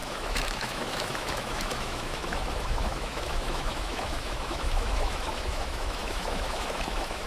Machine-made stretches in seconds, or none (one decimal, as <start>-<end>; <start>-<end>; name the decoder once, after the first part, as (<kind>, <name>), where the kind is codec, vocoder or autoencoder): 0.0-7.3 (autoencoder, DAC-VAE)